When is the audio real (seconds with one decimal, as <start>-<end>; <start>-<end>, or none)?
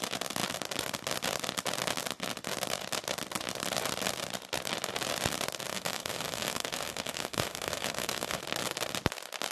0.0-5.7; 8.4-9.5